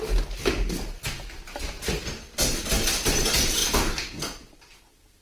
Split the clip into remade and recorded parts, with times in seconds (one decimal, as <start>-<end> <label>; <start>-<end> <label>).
0.0-5.2 recorded